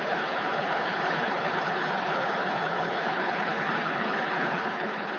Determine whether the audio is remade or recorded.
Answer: remade